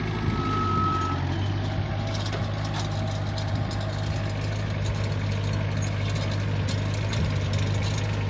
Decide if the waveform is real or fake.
real